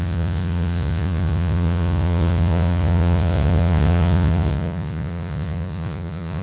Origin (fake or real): fake